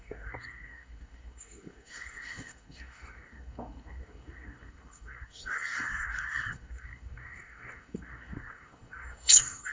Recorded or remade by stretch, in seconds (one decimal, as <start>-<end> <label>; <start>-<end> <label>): 0.0-9.7 remade